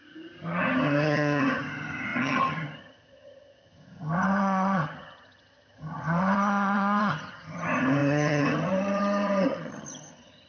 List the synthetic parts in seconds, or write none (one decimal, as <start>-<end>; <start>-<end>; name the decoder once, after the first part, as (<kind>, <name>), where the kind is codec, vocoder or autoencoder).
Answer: 0.0-10.5 (vocoder, HiFi-GAN)